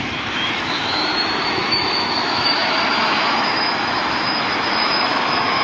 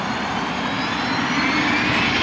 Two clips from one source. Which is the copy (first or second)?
first